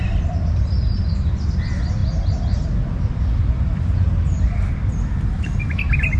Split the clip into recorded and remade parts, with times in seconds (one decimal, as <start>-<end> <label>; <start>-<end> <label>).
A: 0.0-6.2 recorded